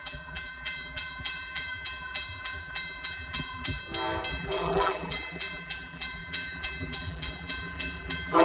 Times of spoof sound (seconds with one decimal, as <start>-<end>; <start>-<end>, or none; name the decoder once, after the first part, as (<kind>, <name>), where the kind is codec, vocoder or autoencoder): 0.0-3.8 (vocoder, BigVGAN v2); 4.3-8.4